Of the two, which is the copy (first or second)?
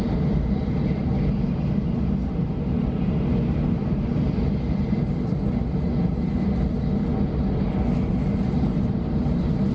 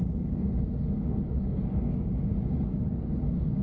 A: second